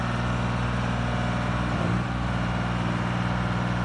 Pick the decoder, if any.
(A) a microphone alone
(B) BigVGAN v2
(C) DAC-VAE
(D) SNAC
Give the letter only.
A